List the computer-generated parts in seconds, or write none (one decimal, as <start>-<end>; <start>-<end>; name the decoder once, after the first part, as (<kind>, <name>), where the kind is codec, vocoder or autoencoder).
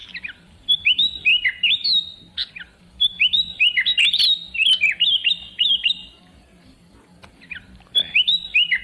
0.0-1.3 (vocoder, BigVGAN v2); 2.5-3.9; 6.7-8.8